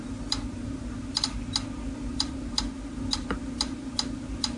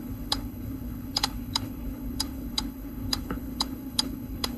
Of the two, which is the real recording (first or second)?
first